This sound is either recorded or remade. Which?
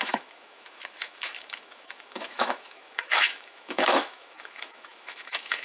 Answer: remade